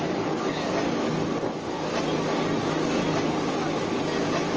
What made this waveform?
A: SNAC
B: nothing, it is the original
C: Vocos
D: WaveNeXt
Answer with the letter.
B